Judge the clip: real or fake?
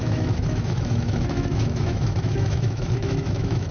fake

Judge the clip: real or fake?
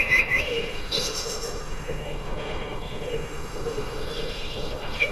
fake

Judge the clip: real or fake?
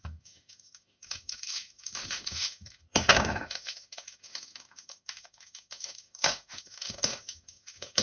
fake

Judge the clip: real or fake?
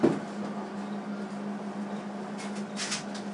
real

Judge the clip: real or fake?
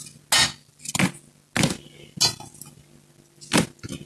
real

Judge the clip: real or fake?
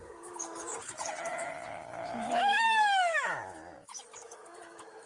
fake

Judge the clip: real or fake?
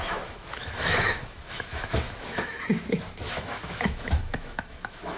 fake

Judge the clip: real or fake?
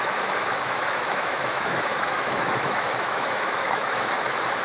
fake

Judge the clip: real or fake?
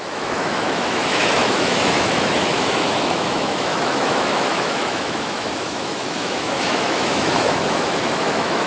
fake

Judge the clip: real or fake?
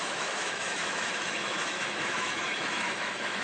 fake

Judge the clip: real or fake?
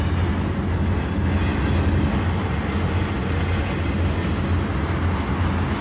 real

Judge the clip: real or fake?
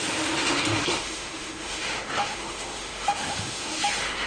fake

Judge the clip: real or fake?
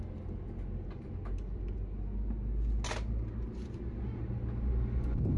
real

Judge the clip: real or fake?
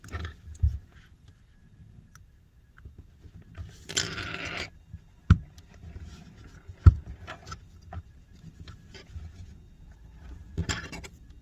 real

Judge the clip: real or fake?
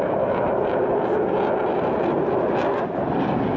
real